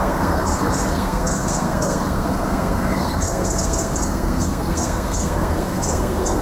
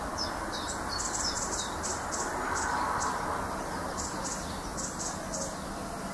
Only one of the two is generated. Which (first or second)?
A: first